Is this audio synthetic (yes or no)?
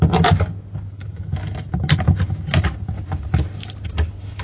no